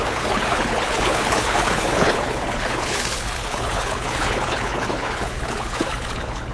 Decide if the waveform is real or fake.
fake